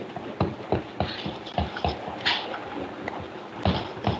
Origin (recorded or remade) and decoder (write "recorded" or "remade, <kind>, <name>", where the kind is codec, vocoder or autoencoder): recorded